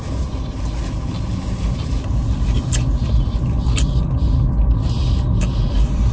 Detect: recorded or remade recorded